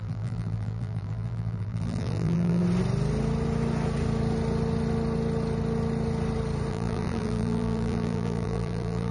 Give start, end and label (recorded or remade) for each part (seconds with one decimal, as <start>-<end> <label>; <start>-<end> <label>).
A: 0.0-2.6 remade; 2.6-6.7 recorded; 6.7-9.1 remade